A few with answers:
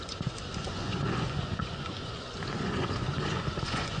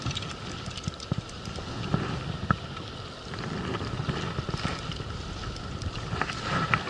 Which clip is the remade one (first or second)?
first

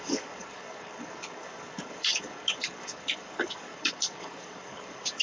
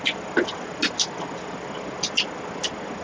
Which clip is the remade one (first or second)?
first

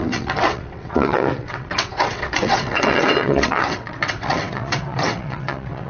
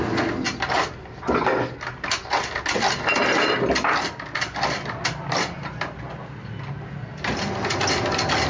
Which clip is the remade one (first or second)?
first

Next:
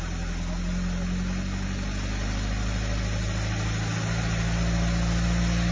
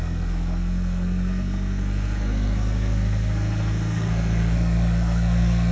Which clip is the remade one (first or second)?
second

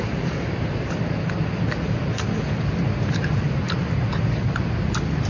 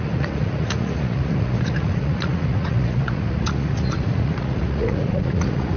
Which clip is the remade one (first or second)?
second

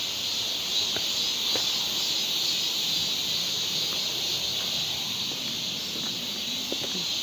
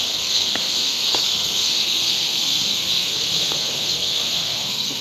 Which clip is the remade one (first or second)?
second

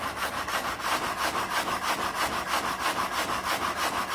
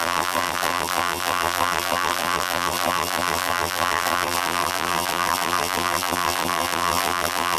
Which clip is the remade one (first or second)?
second